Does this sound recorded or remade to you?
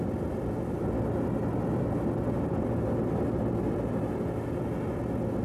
recorded